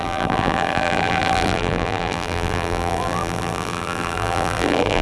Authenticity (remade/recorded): remade